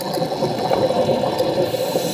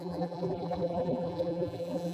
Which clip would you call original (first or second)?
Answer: first